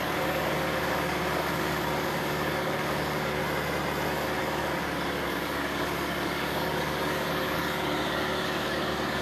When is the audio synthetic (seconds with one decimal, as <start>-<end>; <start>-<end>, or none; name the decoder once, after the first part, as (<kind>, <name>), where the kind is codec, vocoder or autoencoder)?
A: 0.0-3.4 (codec, DAC); 4.4-9.2